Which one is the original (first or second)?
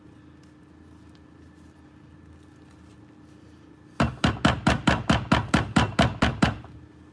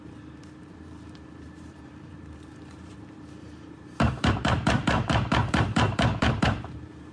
first